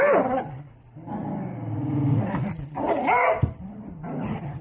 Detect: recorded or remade recorded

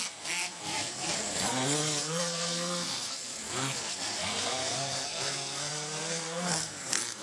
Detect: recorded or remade remade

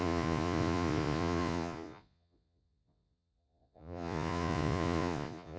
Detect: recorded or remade remade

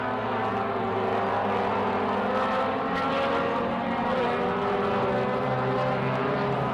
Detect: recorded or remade recorded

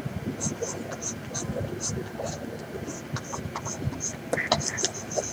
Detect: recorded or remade recorded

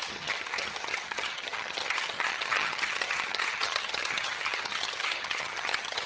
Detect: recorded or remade remade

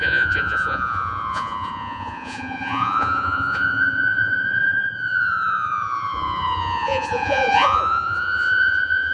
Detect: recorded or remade remade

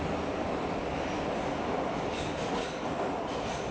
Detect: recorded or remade remade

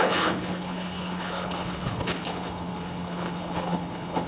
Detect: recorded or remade remade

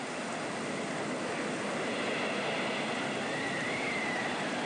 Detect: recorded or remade recorded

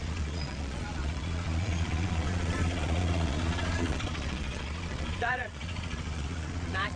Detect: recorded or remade remade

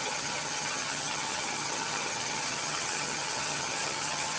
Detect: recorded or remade remade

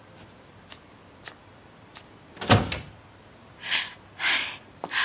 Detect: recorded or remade recorded